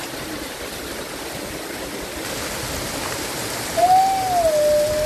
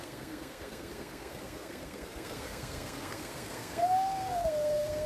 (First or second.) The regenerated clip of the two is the second